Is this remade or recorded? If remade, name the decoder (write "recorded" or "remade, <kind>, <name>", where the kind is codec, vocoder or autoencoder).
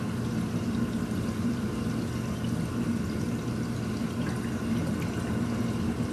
recorded